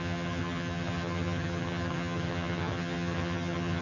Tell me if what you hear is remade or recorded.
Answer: remade